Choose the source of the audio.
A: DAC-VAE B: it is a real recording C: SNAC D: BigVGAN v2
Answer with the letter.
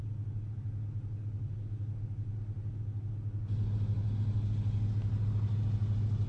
B